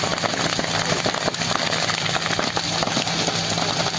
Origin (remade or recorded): recorded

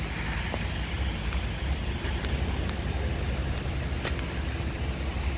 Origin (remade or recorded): recorded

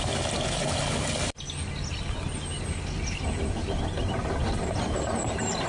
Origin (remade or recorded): recorded